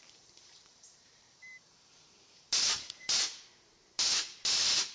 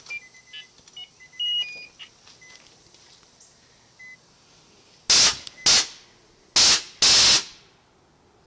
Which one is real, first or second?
second